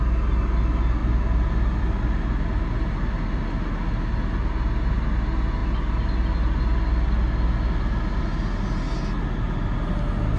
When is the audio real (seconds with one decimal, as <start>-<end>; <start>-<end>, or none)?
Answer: 0.0-10.4